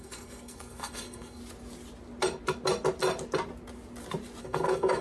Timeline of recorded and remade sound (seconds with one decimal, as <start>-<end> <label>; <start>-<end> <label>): 0.0-1.4 remade; 1.4-4.4 recorded; 4.4-5.0 remade